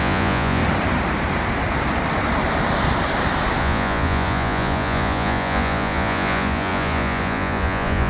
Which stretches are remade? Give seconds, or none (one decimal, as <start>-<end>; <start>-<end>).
0.0-0.6; 3.6-8.1